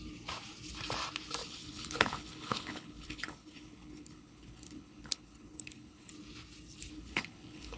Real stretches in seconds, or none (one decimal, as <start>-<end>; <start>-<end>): 0.0-1.4; 6.1-6.9